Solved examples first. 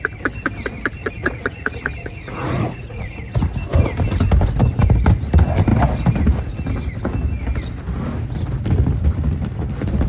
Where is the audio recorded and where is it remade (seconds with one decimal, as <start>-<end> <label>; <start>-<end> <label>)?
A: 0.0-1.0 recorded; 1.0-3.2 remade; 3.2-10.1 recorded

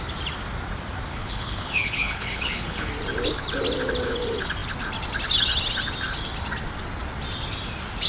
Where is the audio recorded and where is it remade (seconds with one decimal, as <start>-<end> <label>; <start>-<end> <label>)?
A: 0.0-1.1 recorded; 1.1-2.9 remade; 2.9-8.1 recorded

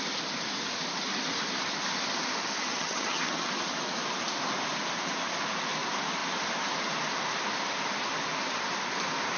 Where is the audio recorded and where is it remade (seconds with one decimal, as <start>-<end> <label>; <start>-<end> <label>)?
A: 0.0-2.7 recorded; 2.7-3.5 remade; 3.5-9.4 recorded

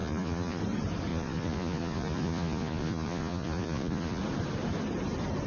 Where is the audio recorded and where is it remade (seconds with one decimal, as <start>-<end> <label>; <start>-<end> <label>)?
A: 0.0-0.6 remade; 0.6-1.1 recorded; 1.1-4.2 remade; 4.2-5.5 recorded

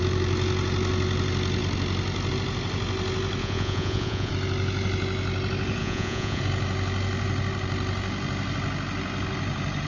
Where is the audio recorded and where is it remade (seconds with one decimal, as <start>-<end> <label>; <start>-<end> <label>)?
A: 0.0-3.4 recorded; 3.4-4.3 remade; 4.3-5.8 recorded; 5.8-6.4 remade; 6.4-9.9 recorded

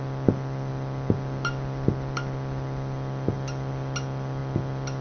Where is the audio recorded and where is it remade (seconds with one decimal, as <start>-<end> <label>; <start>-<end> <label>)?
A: 0.0-5.0 recorded

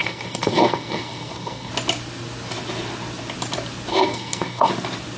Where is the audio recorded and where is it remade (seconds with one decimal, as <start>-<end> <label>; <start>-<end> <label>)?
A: 0.0-1.7 remade; 1.7-3.9 recorded; 3.9-4.7 remade; 4.7-5.2 recorded

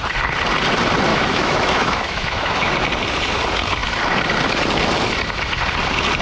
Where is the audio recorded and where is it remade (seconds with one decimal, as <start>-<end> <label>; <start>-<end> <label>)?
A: 0.0-1.1 recorded; 1.1-2.7 remade; 2.7-6.2 recorded